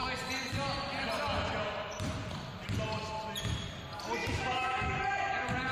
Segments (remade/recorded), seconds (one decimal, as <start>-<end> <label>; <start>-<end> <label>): 0.0-4.2 recorded; 4.2-5.0 remade; 5.0-5.7 recorded